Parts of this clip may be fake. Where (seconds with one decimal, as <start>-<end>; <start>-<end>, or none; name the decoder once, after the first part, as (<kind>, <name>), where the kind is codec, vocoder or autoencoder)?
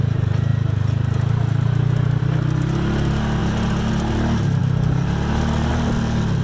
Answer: none